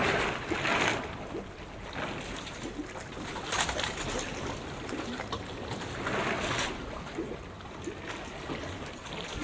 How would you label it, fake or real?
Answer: real